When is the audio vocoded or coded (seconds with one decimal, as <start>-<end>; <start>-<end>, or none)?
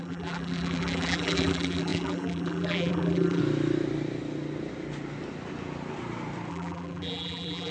0.0-3.4; 6.5-7.7